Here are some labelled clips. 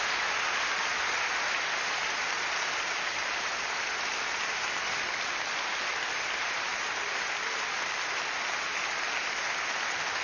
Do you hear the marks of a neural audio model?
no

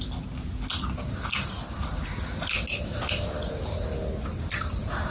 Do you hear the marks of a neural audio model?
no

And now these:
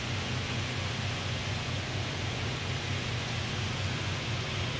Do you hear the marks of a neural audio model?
yes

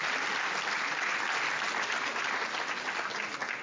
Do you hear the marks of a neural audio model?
no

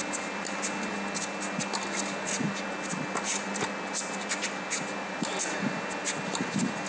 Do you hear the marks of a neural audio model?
no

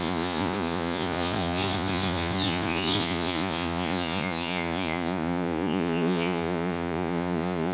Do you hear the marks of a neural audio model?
yes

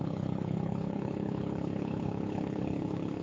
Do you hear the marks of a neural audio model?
yes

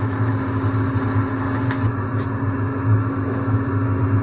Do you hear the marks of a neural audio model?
no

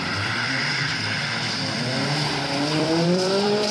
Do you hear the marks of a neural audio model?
yes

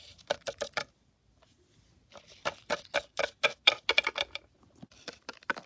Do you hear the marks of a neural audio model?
no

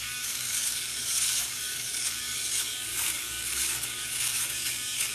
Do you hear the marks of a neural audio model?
yes